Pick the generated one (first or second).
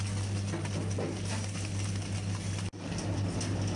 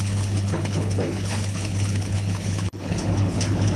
second